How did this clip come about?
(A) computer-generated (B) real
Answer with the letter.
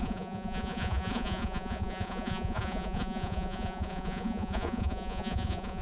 A